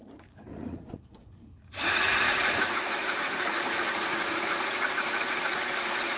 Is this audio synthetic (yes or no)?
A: yes